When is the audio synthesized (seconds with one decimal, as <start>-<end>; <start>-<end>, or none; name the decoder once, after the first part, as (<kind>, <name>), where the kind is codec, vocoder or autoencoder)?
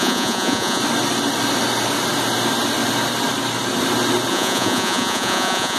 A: 0.0-0.8 (vocoder, Vocos); 4.3-5.8